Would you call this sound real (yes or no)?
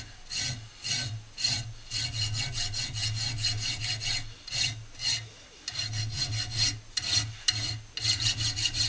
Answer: yes